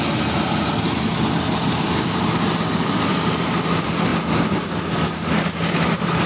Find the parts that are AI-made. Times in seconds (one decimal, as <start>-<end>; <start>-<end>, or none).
none